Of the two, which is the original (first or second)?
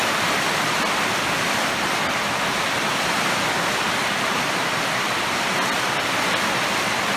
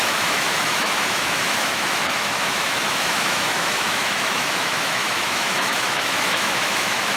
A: first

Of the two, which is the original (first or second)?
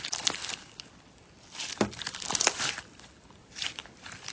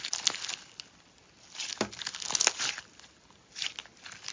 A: second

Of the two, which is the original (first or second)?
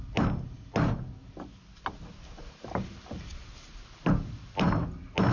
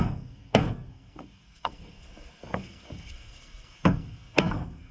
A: first